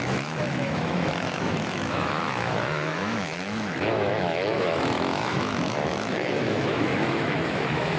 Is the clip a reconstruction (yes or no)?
yes